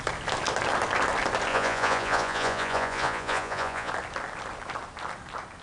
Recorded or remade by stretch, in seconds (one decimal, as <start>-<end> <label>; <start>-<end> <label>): 0.0-1.5 recorded; 1.5-3.9 remade; 3.9-5.6 recorded